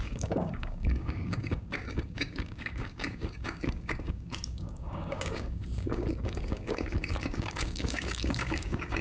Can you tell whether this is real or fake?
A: fake